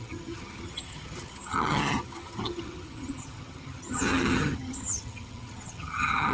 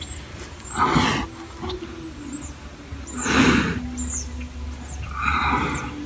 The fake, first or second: first